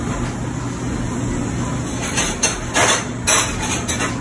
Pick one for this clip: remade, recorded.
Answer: recorded